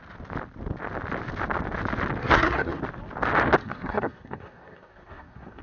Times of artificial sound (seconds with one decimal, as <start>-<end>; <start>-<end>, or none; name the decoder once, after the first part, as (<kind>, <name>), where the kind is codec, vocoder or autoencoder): 2.2-2.8 (codec, SNAC); 3.6-5.6